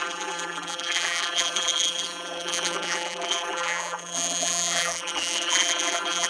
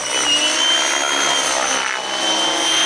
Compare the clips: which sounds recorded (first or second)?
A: second